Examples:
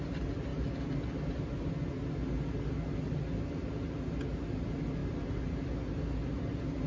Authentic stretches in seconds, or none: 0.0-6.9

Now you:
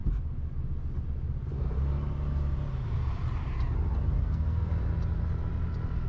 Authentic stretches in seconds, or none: 0.0-4.2; 4.7-6.1